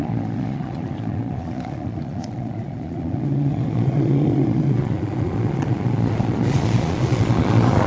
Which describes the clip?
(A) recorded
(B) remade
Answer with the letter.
B